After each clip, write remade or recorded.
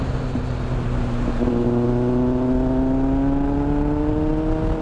recorded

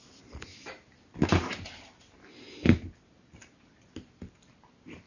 recorded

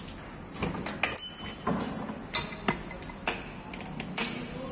recorded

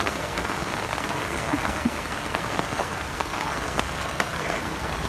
remade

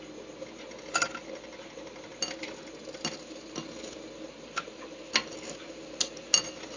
recorded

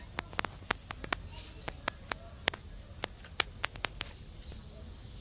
recorded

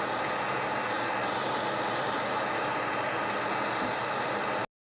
recorded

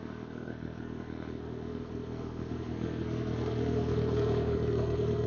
remade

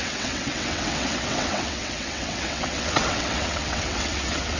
remade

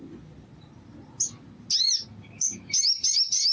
recorded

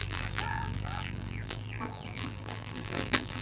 remade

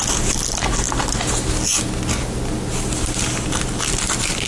recorded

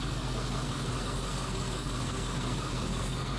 remade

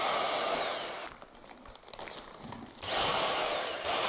recorded